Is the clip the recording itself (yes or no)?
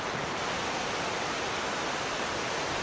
yes